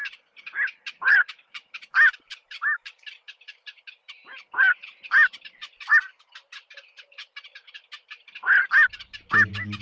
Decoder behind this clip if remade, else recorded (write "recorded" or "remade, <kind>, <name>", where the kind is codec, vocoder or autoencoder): recorded